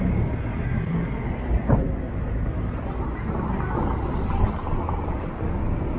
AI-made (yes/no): no